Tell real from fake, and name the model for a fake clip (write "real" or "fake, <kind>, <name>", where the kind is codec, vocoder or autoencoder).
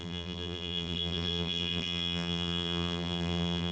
fake, vocoder, BigVGAN v2